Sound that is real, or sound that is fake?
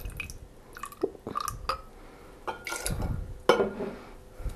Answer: real